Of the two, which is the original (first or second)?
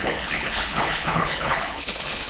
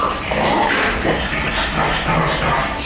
second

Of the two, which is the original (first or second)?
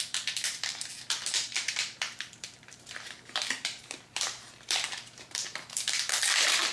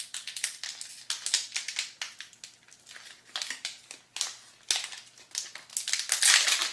second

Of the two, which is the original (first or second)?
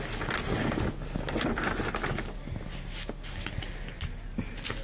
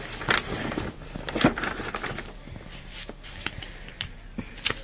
first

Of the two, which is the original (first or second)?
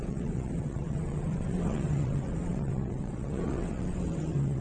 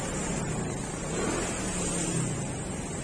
second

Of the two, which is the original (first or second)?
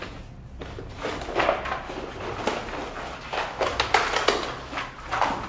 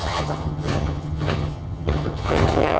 first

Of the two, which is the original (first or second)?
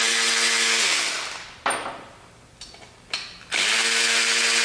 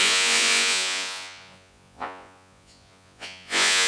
first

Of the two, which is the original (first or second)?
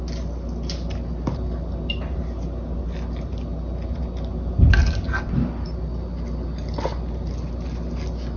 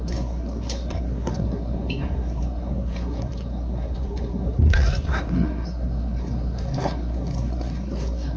first